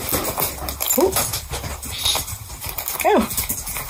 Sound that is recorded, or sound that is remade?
recorded